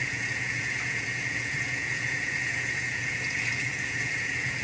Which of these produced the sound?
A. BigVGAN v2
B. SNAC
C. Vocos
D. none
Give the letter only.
C